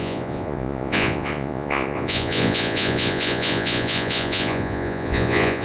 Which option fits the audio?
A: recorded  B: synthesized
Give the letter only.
B